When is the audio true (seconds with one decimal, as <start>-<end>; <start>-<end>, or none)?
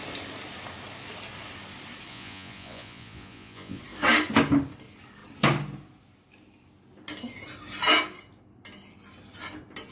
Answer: 0.0-2.1; 3.8-9.9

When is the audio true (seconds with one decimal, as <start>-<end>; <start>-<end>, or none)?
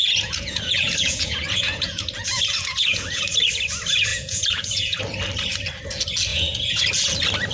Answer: 3.2-4.1; 5.0-6.3; 6.8-7.5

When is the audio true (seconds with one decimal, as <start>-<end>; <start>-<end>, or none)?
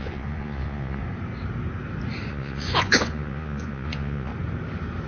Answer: 1.0-2.3; 4.3-5.1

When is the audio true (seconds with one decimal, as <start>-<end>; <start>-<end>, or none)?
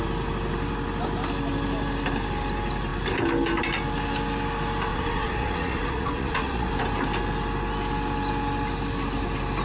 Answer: 0.0-4.9; 6.7-9.6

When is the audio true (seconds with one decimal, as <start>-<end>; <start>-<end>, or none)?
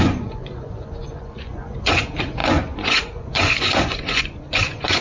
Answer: none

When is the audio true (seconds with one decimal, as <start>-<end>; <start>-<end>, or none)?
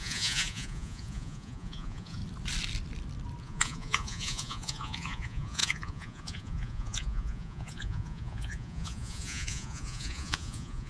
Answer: 2.2-3.4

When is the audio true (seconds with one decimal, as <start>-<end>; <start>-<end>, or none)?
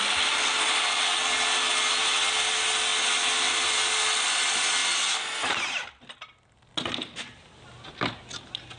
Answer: 0.0-8.8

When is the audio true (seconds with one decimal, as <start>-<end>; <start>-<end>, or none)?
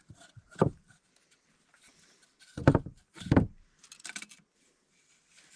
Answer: 0.0-5.6